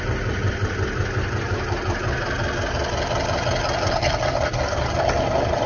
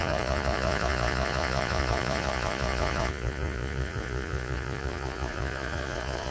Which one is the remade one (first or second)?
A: second